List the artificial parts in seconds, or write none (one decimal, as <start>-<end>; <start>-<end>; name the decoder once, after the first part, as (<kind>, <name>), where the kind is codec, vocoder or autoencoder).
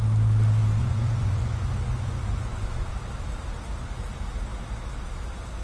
0.8-2.9 (vocoder, Vocos)